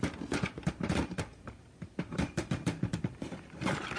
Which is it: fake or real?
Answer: real